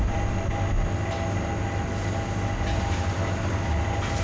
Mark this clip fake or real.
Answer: real